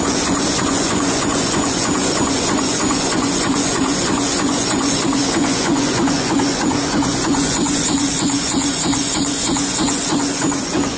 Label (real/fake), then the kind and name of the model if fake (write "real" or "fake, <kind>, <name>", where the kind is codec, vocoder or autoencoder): fake, vocoder, Vocos